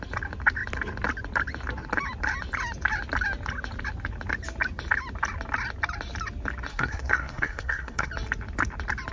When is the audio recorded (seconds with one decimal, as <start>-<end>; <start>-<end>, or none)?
0.0-6.7; 8.1-9.1